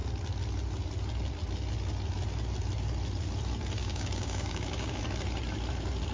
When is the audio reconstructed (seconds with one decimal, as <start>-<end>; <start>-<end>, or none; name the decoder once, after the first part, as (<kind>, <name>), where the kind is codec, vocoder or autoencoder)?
3.8-5.0 (codec, DAC)